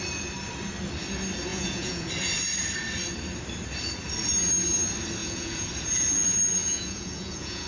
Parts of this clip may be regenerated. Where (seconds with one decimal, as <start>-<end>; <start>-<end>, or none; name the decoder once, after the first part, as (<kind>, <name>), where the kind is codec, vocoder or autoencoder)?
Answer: 1.5-2.1 (vocoder, Vocos); 5.2-5.7; 6.6-7.7